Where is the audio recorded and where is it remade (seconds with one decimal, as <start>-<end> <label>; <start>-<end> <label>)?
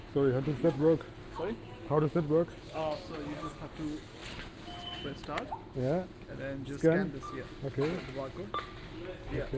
0.0-1.2 recorded; 1.2-2.1 remade; 2.1-9.6 recorded